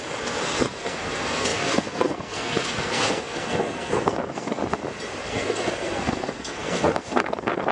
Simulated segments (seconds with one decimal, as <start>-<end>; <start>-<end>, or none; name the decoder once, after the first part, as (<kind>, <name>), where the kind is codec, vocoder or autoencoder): 0.0-4.6 (codec, SNAC); 5.2-7.7